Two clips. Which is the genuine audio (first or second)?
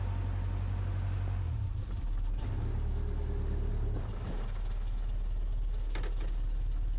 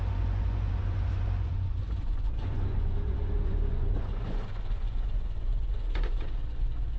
first